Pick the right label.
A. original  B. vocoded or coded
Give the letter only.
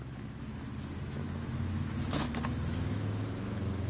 B